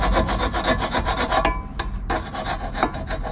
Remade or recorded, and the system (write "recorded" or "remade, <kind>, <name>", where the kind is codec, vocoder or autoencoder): recorded